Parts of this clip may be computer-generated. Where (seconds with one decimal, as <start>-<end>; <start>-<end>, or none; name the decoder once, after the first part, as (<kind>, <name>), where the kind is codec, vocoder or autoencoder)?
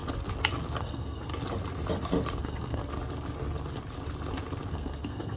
0.8-1.3 (codec, SNAC); 2.4-2.8; 4.7-5.4